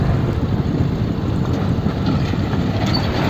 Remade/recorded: recorded